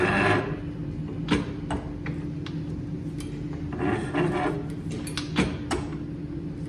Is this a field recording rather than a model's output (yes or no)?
yes